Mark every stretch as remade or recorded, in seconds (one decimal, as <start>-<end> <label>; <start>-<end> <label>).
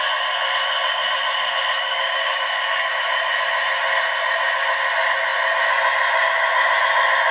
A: 0.0-1.8 recorded; 1.8-2.9 remade; 2.9-7.3 recorded